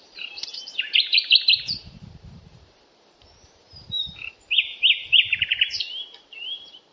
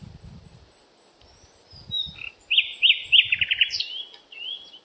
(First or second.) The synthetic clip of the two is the first